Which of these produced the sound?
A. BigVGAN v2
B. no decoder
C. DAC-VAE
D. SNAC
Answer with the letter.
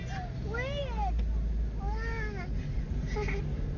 B